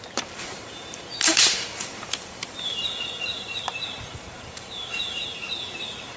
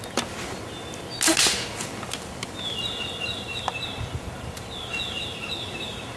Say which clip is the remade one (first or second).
first